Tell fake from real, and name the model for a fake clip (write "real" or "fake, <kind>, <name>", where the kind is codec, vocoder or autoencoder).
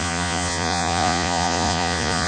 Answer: fake, vocoder, Vocos